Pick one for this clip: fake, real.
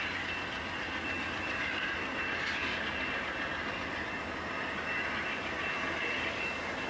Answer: real